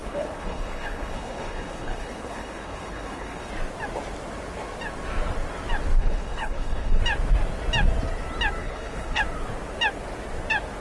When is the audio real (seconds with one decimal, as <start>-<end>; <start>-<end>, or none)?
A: 3.5-6.0; 7.0-8.6; 9.2-10.8